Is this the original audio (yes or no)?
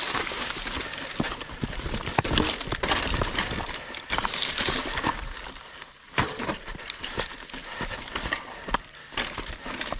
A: yes